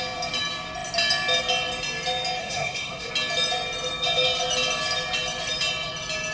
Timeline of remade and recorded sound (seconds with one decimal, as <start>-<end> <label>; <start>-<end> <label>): 0.0-2.4 recorded; 2.4-3.1 remade; 3.1-6.3 recorded